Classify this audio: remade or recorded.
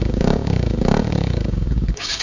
remade